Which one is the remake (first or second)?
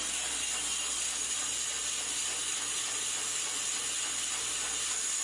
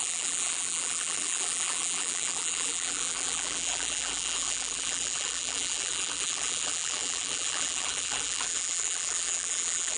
second